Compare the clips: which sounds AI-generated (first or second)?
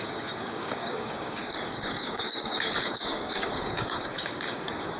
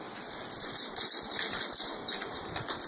first